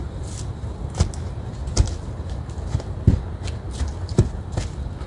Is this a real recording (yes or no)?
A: yes